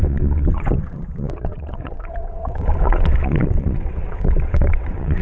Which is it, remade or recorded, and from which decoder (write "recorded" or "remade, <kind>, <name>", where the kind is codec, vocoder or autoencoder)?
remade, vocoder, WaveNeXt